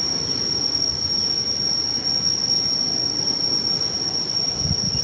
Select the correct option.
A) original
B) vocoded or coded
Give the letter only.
A